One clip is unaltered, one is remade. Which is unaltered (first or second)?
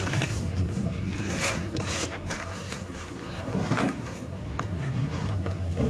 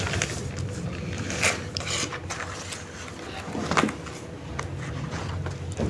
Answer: second